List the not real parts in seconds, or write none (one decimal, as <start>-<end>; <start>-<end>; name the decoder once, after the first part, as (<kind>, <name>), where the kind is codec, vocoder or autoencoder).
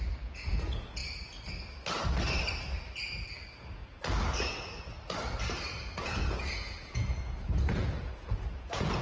0.0-1.0 (vocoder, Vocos); 3.4-3.8; 6.0-9.0